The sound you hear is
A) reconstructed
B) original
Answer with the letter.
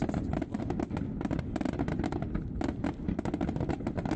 A